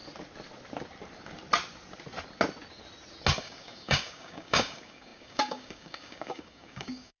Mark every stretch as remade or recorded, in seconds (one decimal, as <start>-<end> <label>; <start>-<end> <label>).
0.0-3.4 recorded; 3.4-7.2 remade